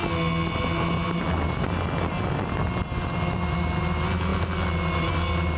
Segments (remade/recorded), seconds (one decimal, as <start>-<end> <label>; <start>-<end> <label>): 0.0-5.6 recorded